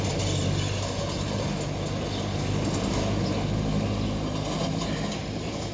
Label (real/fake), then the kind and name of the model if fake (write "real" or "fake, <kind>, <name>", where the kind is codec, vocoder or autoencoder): real